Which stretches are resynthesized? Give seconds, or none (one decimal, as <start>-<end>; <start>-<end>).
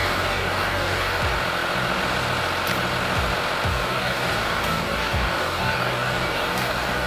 0.0-1.2; 3.7-7.1